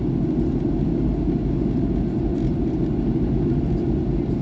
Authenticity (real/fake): real